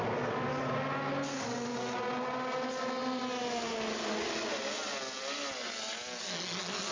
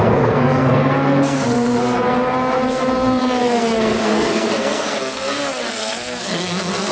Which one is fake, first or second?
second